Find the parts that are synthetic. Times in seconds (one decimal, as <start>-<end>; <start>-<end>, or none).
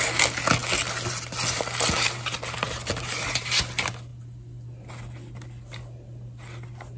none